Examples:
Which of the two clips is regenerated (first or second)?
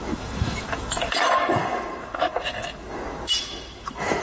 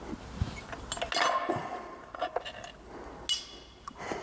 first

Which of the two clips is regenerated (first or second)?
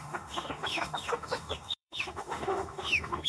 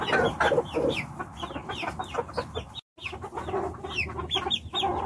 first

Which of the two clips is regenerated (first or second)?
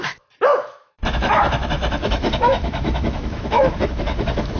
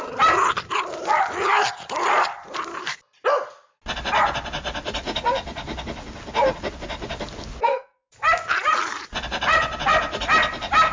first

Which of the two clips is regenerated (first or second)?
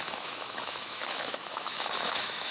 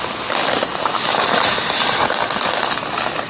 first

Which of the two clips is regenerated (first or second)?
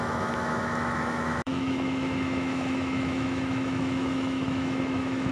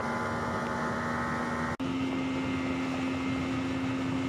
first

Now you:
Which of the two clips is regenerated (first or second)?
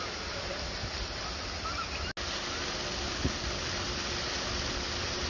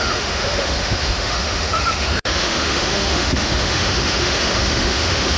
second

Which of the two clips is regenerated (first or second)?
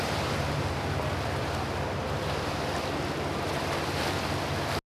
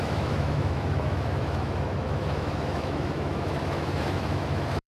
second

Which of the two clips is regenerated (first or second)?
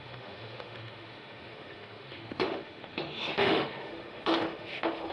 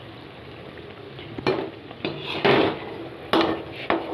first